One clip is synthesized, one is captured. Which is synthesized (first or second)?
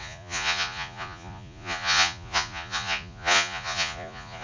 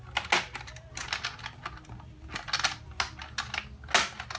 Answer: first